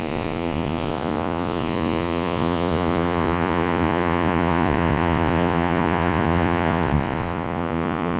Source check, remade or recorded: remade